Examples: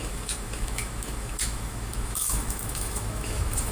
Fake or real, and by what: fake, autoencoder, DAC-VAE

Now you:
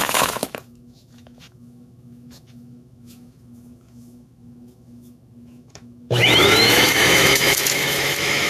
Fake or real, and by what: fake, autoencoder, DAC-VAE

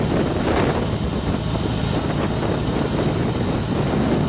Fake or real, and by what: real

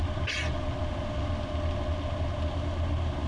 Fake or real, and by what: real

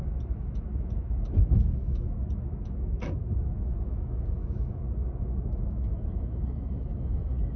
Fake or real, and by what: fake, autoencoder, DAC-VAE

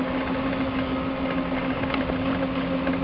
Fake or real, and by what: real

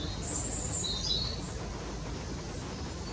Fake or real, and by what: real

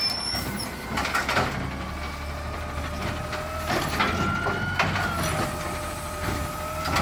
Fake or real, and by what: real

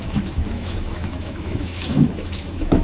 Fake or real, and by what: fake, autoencoder, DAC-VAE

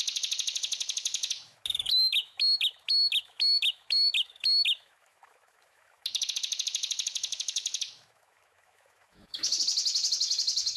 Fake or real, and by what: fake, autoencoder, DAC-VAE